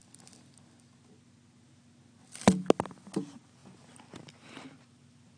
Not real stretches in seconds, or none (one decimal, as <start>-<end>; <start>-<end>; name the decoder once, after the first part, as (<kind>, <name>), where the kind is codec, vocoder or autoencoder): none